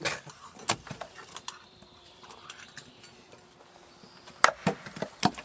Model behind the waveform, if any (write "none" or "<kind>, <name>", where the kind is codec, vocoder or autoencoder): none